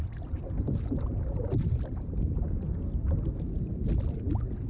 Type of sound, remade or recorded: recorded